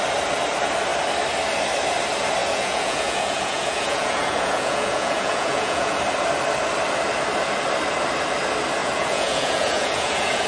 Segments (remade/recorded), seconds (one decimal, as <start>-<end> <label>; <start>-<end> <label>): 0.0-2.4 recorded; 2.4-6.0 remade; 6.0-8.8 recorded; 8.8-10.5 remade